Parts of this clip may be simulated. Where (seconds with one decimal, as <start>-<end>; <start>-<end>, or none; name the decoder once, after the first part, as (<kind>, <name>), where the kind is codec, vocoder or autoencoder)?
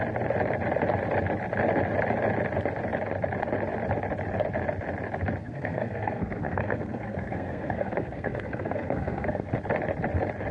5.4-9.5 (codec, SNAC)